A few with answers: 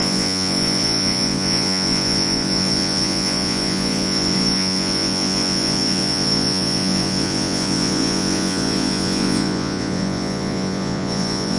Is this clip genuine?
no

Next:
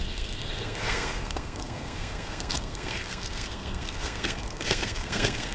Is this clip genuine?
no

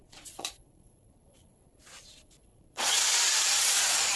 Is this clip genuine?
no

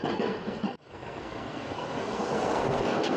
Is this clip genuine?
no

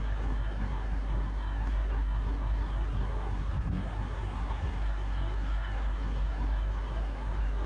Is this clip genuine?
no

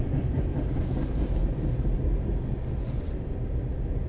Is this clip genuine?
yes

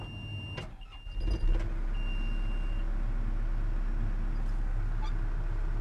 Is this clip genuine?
yes